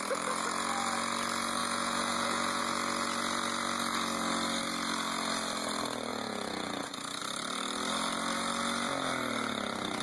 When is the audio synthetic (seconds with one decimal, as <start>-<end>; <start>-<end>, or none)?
1.6-2.6; 6.1-7.2